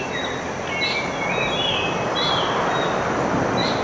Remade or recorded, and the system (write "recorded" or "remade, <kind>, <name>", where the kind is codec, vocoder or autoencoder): recorded